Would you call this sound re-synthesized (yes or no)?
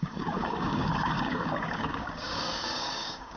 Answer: yes